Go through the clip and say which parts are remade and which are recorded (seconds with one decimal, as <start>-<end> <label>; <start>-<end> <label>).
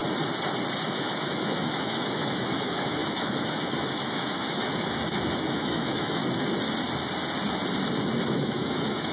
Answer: 0.0-0.9 recorded; 0.9-6.2 remade; 6.2-8.2 recorded; 8.2-9.1 remade